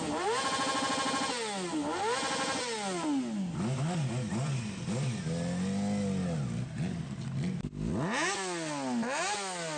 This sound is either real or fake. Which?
real